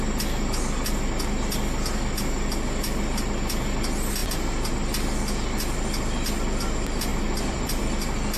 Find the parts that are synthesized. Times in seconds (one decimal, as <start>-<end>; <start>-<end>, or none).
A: 7.1-7.8